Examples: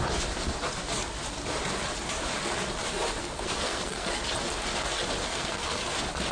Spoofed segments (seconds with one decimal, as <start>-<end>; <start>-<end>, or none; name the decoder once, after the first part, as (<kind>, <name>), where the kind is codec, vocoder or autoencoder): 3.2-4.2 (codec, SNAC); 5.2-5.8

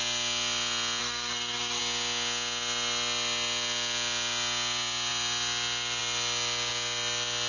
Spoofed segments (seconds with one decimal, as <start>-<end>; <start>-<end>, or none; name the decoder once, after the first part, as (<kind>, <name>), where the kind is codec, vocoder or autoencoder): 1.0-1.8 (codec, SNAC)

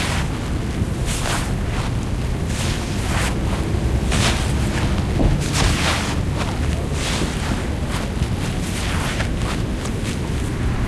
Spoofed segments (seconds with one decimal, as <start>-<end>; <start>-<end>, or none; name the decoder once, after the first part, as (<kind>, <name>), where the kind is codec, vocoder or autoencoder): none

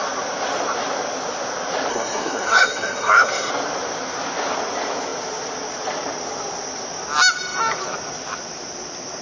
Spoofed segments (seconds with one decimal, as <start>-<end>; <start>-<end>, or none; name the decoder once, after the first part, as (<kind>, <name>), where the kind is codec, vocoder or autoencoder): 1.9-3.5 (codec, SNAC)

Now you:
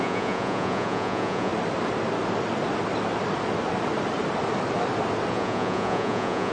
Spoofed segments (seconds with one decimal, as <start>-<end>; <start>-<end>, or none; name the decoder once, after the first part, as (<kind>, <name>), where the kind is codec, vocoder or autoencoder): 0.0-1.5 (vocoder, Vocos); 5.3-6.5

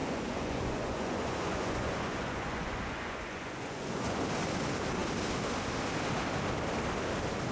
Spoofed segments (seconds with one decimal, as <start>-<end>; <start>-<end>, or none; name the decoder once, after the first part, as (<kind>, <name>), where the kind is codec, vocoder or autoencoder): 0.0-4.2 (vocoder, Vocos)

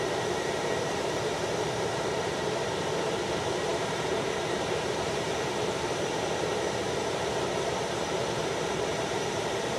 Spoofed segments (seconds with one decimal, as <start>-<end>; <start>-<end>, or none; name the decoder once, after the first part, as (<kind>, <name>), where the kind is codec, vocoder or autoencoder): 0.0-9.8 (vocoder, BigVGAN v2)